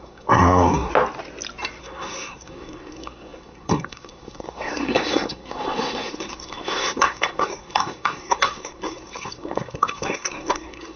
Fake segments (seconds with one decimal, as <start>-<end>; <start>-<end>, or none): 0.0-0.9; 1.8-11.0